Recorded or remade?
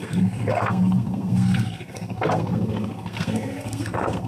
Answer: remade